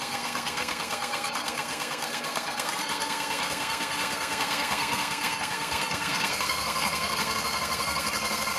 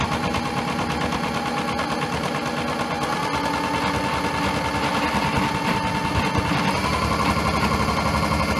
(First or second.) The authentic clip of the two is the second